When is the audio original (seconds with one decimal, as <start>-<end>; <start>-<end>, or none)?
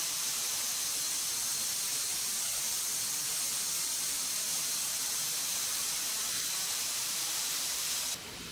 0.0-4.5; 8.0-8.5